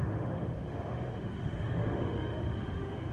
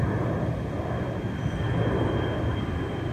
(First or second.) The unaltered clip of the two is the second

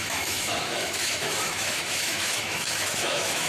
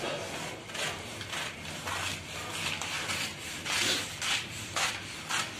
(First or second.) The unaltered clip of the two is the second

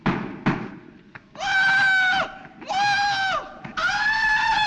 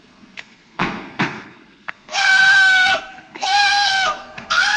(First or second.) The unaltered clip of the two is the first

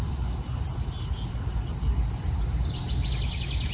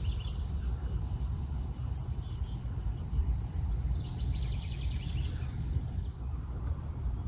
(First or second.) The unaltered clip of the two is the first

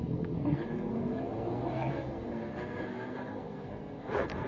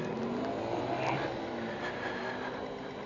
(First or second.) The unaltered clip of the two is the second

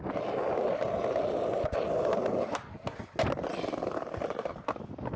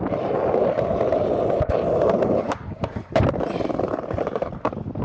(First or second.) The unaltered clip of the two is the first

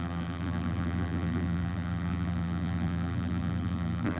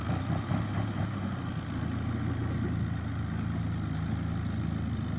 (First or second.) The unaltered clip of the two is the second